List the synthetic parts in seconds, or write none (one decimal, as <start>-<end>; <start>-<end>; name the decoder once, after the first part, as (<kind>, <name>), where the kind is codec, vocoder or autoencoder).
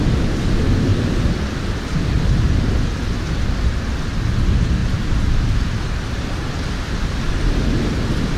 4.8-5.3 (vocoder, BigVGAN v2)